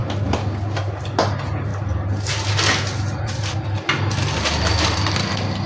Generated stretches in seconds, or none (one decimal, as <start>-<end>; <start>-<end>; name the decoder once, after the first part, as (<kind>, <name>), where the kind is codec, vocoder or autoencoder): 0.0-0.9 (vocoder, BigVGAN v2); 1.7-3.6